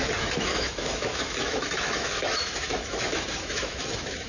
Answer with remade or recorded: remade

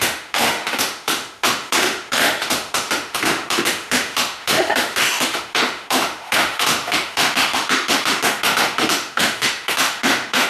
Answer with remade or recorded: remade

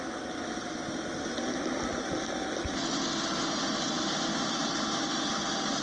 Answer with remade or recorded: recorded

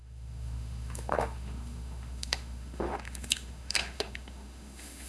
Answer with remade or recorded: remade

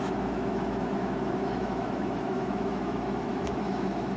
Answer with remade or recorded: remade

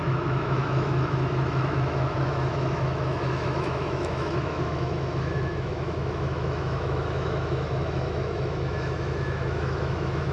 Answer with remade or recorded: remade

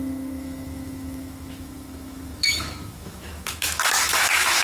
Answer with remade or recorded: remade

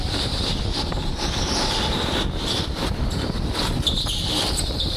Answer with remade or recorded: recorded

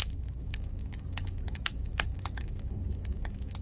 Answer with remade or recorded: remade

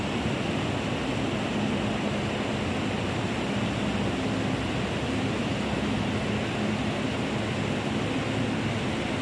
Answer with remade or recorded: recorded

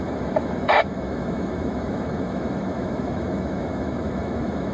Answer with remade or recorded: remade